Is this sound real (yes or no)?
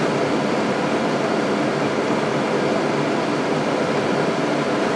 yes